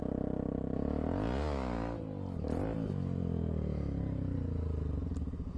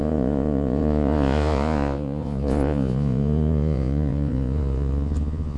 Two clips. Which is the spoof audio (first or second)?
second